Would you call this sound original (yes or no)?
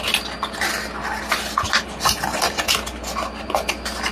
yes